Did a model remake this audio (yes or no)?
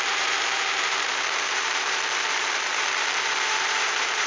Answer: yes